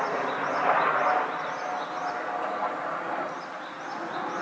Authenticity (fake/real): real